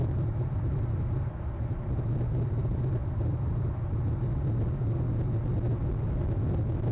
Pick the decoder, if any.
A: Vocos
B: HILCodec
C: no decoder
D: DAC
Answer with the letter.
C